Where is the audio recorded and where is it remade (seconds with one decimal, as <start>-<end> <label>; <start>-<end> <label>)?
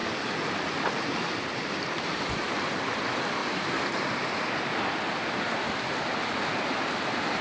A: 0.0-7.4 recorded